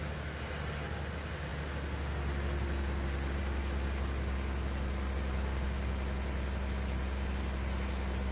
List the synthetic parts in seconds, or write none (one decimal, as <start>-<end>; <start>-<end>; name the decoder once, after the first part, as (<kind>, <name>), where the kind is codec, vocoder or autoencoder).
none

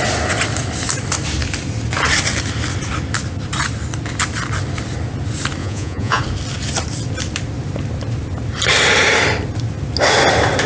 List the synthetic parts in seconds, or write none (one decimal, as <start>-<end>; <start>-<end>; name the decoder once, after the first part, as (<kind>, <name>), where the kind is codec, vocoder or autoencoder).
5.6-6.2 (vocoder, Vocos)

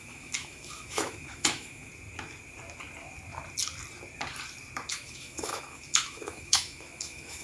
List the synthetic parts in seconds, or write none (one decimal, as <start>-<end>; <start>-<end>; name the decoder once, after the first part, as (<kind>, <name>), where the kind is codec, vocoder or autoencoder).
0.0-1.9 (autoencoder, DAC-VAE); 4.9-7.4

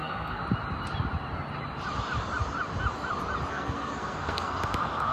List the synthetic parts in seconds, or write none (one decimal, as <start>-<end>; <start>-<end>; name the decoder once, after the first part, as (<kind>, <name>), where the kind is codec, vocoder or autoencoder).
0.0-0.4 (codec, SNAC); 3.5-5.1